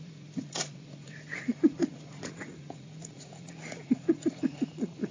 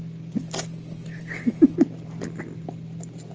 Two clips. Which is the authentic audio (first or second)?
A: second